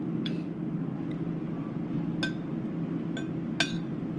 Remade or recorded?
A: recorded